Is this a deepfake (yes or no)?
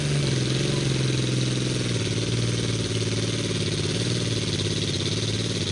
no